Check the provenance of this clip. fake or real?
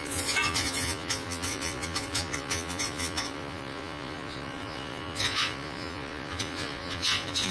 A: fake